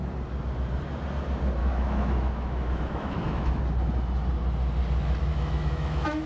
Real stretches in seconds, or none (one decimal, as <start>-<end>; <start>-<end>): 0.0-1.6; 3.6-5.3

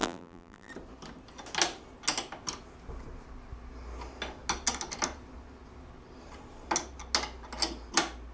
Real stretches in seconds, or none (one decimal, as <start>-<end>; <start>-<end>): 0.7-8.3

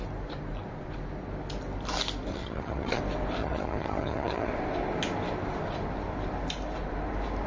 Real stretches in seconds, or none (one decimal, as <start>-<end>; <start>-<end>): 0.0-2.3; 3.0-3.4; 4.5-7.5

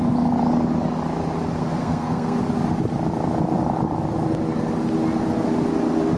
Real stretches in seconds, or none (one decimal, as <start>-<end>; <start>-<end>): 0.0-1.6; 2.4-6.2

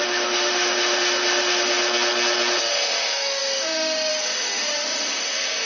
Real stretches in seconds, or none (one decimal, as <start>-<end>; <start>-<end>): 1.8-2.7

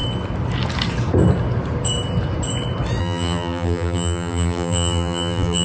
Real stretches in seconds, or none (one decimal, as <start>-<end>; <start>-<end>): 0.0-3.0